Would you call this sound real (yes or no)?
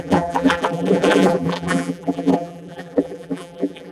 no